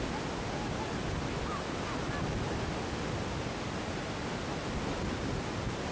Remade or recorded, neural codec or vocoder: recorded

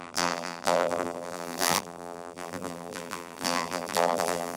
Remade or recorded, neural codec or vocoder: remade, vocoder, BigVGAN v2